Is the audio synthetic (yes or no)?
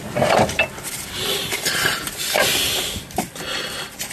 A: no